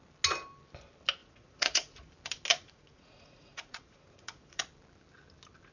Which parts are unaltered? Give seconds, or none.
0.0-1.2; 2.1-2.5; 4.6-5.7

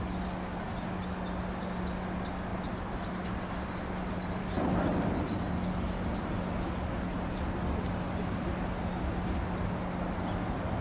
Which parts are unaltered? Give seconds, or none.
0.0-10.8

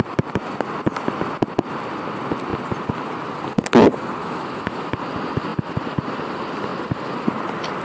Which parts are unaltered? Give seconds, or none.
0.0-4.2; 4.9-7.8

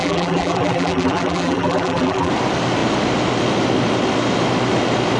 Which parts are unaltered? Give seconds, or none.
2.3-5.2